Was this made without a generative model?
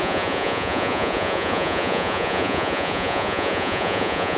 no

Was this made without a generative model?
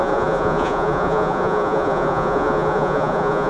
no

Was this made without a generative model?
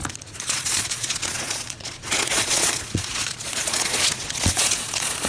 no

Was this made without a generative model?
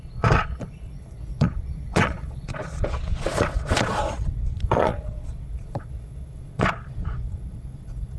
no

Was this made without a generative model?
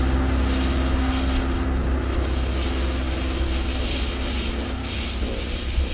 yes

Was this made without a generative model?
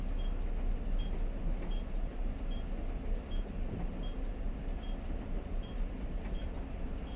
yes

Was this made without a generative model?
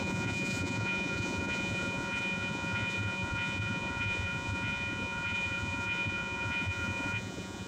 no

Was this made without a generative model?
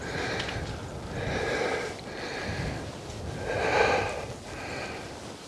yes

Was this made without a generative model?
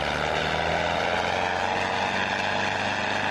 yes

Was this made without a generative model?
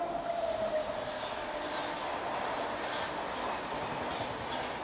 yes